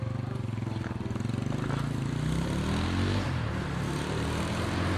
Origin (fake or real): real